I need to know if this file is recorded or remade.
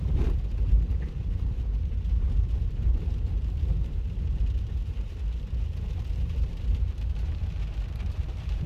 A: remade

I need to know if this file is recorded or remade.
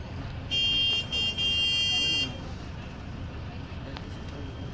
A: recorded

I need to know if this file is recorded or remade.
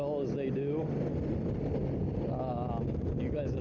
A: recorded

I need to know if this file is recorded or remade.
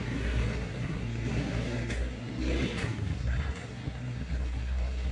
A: remade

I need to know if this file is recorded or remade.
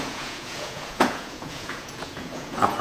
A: remade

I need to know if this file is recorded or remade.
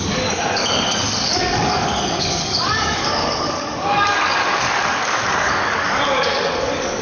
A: remade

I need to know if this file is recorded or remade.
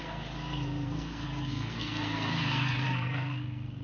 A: remade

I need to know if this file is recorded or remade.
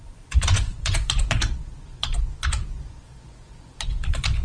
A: remade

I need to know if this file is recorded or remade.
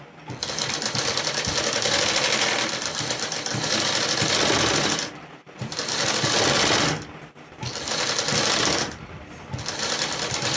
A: recorded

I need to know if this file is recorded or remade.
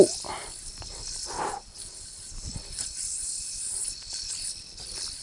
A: remade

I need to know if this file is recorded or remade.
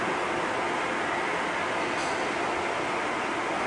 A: recorded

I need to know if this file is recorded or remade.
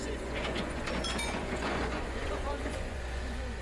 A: remade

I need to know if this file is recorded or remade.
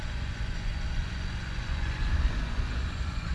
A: remade